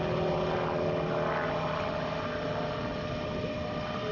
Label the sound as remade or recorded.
recorded